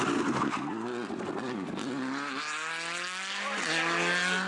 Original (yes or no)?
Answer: yes